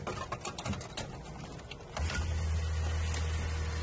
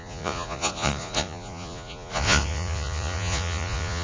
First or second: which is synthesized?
second